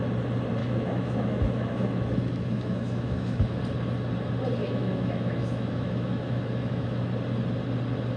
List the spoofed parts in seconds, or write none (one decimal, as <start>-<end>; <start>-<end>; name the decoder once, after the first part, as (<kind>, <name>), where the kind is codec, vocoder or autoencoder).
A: 0.6-3.6 (autoencoder, DAC-VAE); 4.6-7.0